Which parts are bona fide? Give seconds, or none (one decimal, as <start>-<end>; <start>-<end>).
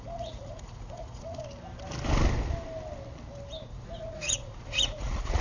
1.4-3.7